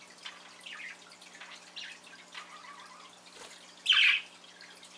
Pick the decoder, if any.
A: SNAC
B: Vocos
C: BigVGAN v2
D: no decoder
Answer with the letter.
D